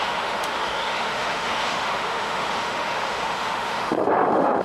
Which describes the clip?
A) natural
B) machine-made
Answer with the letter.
B